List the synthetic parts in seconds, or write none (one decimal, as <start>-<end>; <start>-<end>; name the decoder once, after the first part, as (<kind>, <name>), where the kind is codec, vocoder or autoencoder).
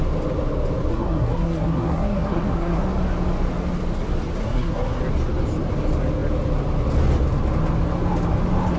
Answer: 0.9-2.8 (codec, SNAC); 4.4-5.0